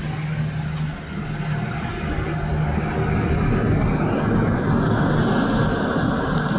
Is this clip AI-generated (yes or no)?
no